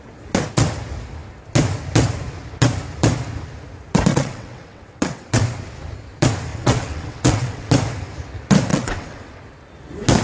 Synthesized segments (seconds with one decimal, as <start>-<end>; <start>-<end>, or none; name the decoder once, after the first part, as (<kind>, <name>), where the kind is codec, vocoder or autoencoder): 4.1-5.4 (vocoder, WaveNeXt); 6.5-7.7; 8.7-9.4